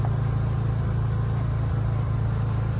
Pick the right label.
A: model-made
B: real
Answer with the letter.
B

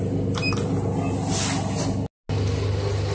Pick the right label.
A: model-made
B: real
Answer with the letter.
B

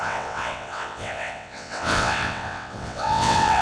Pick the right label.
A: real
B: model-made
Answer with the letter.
B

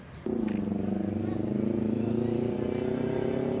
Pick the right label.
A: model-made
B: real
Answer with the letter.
B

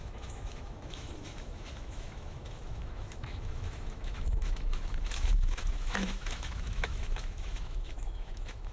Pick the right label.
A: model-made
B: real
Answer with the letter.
A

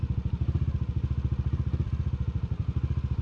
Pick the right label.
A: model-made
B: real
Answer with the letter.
B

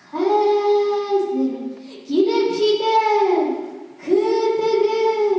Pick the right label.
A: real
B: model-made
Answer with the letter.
A